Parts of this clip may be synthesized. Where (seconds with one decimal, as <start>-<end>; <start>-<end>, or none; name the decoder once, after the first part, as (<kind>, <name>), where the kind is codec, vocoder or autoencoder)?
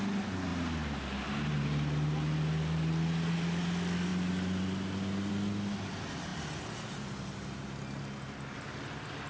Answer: none